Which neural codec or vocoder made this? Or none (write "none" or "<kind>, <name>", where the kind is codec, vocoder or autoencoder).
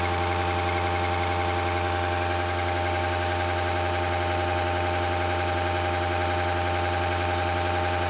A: none